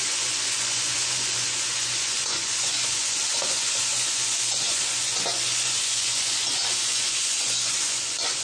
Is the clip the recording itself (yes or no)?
no